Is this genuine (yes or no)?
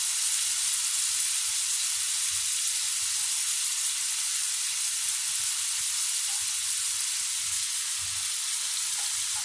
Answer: yes